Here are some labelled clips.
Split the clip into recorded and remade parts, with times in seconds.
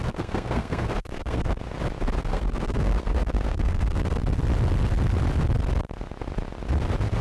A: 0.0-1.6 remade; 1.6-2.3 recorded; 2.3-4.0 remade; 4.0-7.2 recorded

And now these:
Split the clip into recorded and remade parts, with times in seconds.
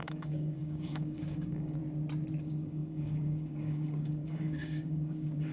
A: 0.0-1.8 remade; 1.8-2.4 recorded; 2.4-5.5 remade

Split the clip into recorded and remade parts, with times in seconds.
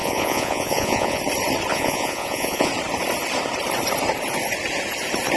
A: 0.0-1.2 remade; 1.2-1.7 recorded; 1.7-2.7 remade; 2.7-5.4 recorded